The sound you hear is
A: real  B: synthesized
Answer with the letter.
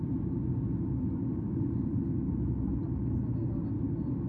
A